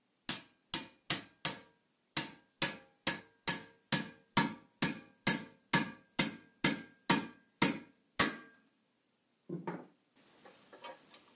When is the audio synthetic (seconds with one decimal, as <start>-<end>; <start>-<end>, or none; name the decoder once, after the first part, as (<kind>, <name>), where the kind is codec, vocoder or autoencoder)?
none